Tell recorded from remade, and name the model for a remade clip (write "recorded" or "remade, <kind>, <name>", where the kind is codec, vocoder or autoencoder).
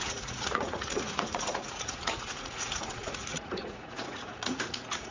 remade, vocoder, Vocos